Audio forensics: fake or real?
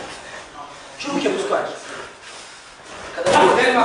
fake